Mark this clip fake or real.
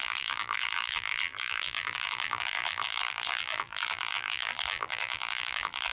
fake